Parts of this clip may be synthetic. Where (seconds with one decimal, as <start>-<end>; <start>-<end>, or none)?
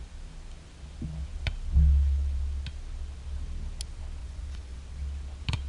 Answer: 4.2-4.8